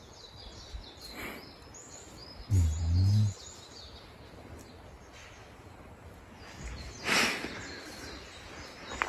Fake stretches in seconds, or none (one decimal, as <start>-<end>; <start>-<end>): 5.4-6.2